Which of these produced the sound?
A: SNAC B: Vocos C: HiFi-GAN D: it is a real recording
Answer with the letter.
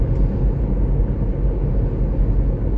D